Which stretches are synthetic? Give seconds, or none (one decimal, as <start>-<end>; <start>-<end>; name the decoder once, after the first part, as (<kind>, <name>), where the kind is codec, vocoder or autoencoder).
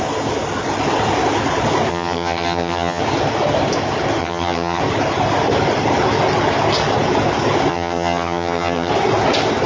1.9-3.0 (vocoder, HiFi-GAN); 4.2-4.8; 7.7-8.9